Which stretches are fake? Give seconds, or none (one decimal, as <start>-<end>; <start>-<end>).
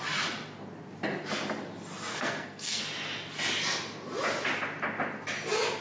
2.1-2.8